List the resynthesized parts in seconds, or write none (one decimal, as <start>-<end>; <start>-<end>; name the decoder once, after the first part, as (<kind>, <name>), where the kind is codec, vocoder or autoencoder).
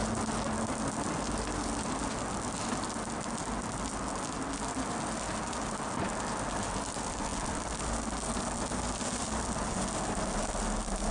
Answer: none